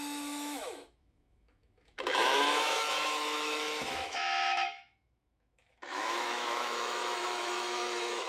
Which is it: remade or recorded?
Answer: remade